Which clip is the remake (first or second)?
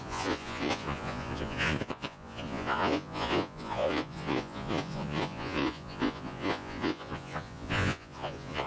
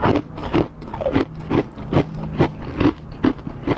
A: first